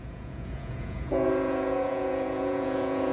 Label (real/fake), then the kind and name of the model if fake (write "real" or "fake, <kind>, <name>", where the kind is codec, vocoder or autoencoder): fake, vocoder, Vocos